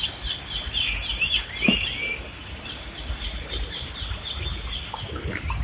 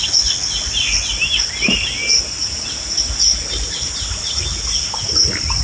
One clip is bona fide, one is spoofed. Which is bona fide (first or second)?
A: second